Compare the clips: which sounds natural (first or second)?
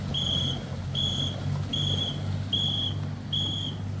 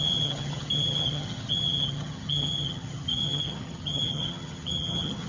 first